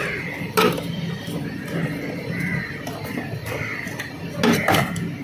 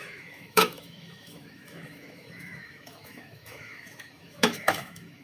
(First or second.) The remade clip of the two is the second